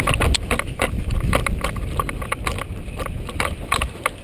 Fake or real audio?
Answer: real